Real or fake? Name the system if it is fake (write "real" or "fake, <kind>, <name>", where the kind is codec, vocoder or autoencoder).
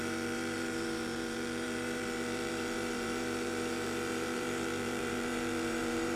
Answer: fake, vocoder, BigVGAN v2